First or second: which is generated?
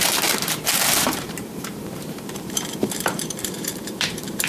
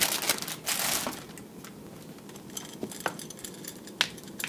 first